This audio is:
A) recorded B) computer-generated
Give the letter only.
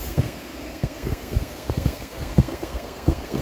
B